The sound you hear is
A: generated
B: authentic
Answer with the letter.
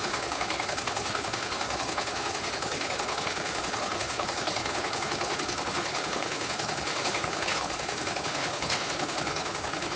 A